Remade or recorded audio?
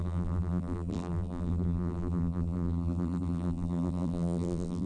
remade